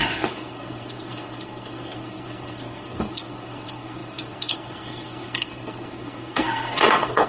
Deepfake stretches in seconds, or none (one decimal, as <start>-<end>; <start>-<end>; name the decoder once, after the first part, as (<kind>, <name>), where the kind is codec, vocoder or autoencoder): 0.0-7.3 (codec, SNAC)